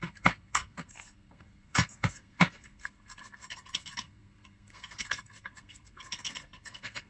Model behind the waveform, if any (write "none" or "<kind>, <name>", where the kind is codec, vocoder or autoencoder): codec, SNAC